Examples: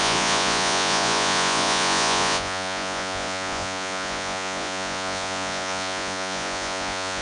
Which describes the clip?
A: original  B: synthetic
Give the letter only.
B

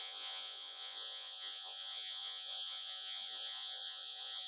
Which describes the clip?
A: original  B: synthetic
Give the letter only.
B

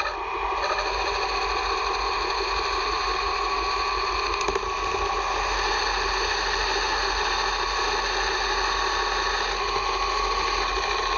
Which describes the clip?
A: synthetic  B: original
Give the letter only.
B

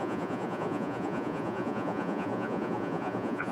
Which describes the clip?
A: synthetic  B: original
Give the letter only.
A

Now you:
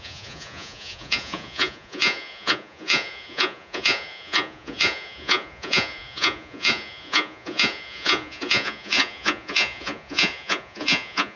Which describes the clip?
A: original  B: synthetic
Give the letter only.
B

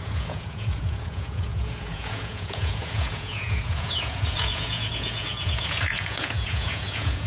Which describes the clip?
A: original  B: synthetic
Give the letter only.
B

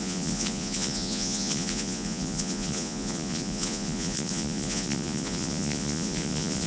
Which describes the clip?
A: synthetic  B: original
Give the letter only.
A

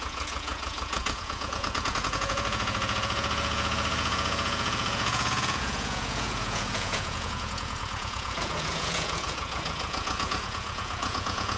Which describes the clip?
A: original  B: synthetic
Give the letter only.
B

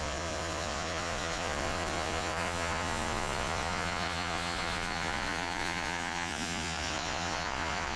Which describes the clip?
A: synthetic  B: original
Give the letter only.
A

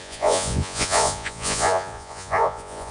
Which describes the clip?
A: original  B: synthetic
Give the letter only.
B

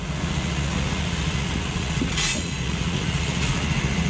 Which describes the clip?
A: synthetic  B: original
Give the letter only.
A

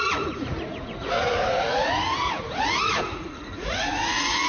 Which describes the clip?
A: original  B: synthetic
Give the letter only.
B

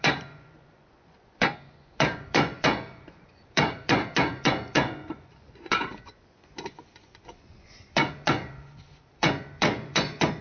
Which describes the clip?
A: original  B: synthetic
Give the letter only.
B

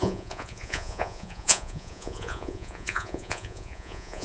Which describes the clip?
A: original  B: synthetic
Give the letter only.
B